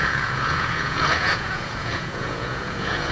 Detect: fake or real fake